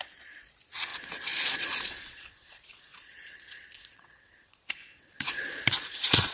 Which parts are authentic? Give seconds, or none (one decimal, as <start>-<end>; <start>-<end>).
none